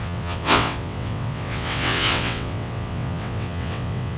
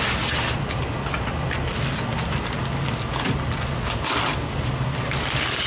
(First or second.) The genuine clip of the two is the second